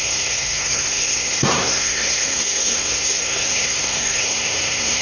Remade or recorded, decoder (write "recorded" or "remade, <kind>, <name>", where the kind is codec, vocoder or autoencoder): remade, codec, SNAC